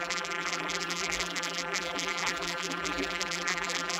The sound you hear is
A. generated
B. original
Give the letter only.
A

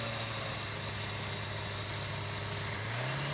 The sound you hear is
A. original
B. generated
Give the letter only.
A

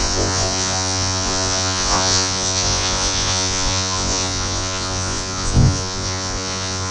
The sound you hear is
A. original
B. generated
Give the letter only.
B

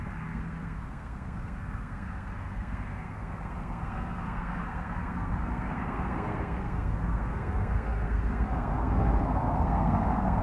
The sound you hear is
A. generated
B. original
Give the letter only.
A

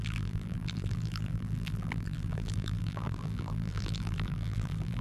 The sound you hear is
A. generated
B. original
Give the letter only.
A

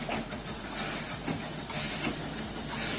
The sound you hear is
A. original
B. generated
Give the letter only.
A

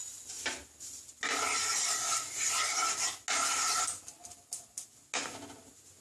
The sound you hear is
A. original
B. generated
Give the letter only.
A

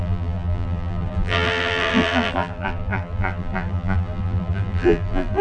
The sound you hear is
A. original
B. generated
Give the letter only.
B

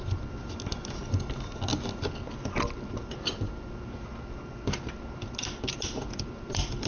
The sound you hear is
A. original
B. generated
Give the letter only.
A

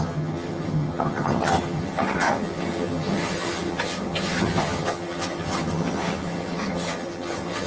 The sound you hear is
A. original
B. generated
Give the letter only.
B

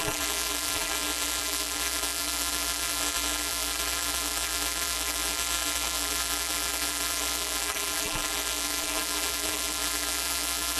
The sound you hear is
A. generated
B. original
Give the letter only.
A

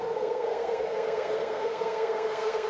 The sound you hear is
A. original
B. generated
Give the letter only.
B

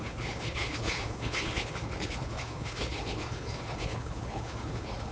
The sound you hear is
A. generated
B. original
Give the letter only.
A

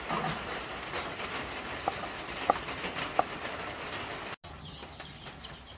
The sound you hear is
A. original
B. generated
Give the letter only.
A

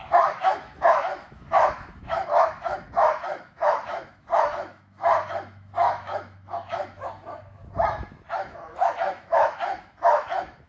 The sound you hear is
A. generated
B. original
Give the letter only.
A